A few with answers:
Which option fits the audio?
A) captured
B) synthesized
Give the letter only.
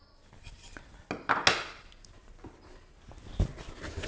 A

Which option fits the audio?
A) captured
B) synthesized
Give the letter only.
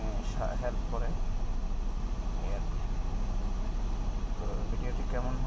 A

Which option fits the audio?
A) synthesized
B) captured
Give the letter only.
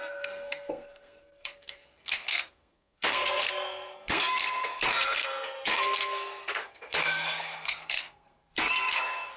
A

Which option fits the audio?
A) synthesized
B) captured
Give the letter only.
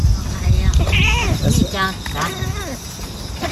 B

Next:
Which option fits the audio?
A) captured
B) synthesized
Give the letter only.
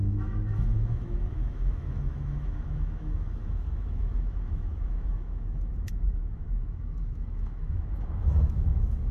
B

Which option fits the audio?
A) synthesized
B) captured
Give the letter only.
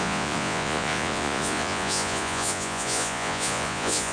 A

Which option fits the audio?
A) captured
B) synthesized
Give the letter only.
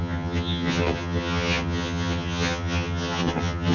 B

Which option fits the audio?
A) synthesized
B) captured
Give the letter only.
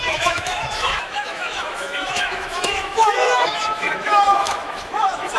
A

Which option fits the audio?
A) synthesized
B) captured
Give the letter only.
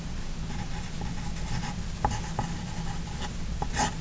B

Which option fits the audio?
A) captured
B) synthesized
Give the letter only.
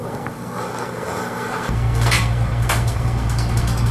B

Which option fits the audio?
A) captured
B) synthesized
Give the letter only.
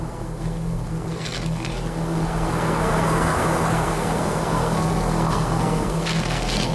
B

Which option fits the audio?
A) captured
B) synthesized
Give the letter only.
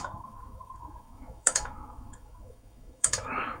B